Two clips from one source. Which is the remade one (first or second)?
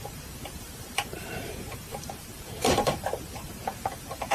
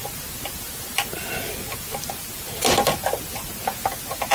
first